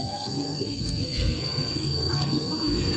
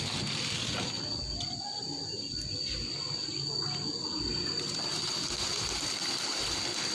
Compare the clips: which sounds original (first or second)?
second